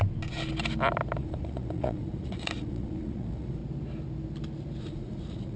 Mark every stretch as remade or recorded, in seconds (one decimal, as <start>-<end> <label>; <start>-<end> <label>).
0.0-1.2 recorded; 1.2-3.6 remade; 3.6-4.8 recorded; 4.8-5.6 remade